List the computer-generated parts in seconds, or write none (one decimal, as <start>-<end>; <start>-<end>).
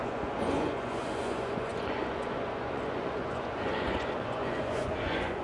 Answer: 0.0-5.4